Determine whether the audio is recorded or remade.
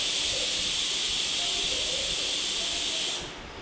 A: recorded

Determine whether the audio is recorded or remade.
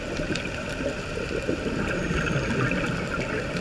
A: recorded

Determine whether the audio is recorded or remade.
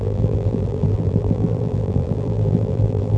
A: remade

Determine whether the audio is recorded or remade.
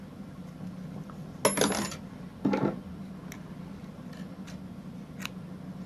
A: recorded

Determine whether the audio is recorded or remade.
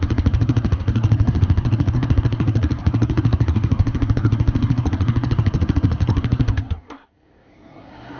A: remade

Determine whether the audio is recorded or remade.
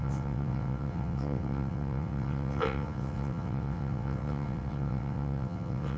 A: remade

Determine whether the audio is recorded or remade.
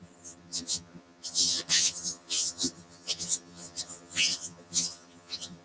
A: remade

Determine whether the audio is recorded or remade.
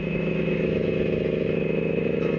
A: remade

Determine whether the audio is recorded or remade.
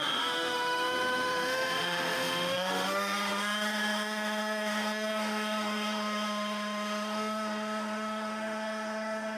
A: remade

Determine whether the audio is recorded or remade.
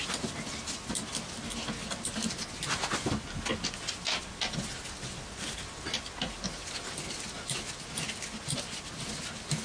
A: recorded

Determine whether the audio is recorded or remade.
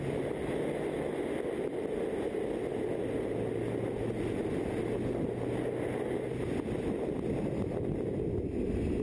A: recorded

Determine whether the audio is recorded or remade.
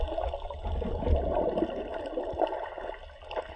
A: recorded